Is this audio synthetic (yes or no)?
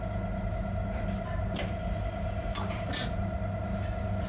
no